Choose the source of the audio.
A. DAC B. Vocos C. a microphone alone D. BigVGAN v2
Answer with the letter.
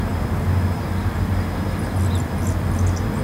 C